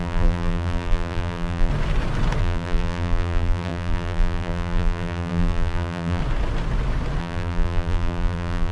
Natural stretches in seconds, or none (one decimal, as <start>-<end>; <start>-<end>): 1.7-2.4; 6.2-7.2